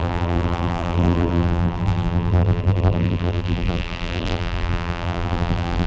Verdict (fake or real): fake